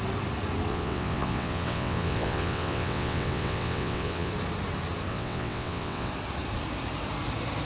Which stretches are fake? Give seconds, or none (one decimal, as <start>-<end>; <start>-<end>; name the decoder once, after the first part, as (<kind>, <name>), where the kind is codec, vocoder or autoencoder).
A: 0.7-4.3 (vocoder, WaveNeXt); 5.1-6.1